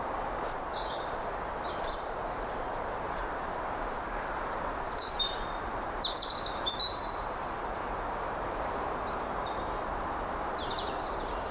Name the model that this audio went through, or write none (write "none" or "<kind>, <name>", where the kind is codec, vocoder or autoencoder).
vocoder, BigVGAN v2